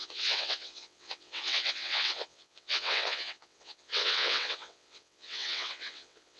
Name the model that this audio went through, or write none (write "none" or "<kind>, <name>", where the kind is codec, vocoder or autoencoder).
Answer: vocoder, WaveNeXt